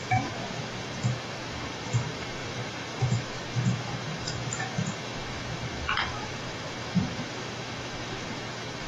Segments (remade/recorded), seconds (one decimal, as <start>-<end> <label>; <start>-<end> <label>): 0.0-8.9 remade